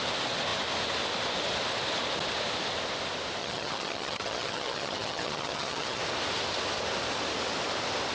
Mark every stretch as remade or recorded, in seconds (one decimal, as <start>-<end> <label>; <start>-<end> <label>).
0.0-3.4 recorded; 3.4-6.0 remade; 6.0-8.1 recorded